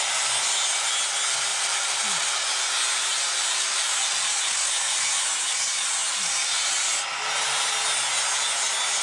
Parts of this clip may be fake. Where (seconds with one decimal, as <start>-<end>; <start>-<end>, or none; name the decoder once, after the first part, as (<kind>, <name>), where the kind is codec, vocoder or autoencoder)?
1.5-2.3 (vocoder, BigVGAN v2)